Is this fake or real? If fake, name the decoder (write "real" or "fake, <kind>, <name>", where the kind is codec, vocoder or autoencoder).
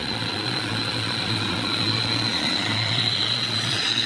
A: fake, vocoder, Vocos